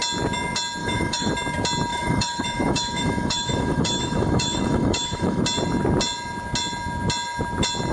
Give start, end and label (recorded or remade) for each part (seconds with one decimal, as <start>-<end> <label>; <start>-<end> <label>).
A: 0.0-0.8 recorded; 0.8-1.3 remade; 1.3-1.9 recorded; 1.9-5.4 remade; 5.4-7.9 recorded